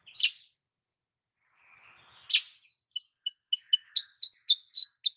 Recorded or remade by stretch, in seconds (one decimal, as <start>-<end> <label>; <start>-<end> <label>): 0.0-5.2 recorded